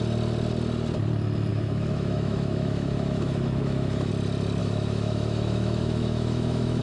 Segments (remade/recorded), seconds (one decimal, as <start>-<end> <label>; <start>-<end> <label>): 0.0-1.5 recorded; 1.5-4.1 remade; 4.1-4.6 recorded; 4.6-6.8 remade